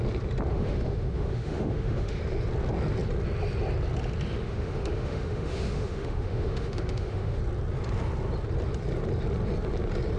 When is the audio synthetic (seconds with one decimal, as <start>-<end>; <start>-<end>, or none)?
0.5-2.2; 4.4-7.4